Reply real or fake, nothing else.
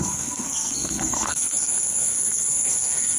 fake